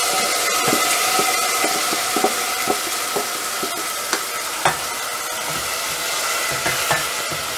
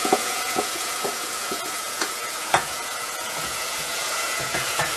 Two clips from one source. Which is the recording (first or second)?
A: first